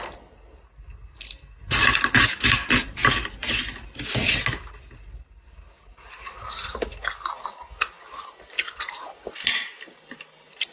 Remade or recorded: recorded